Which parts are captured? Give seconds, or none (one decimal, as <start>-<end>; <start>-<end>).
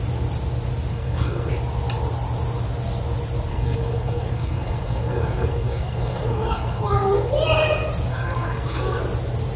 0.0-0.9; 1.5-3.5; 7.3-8.1; 9.0-9.6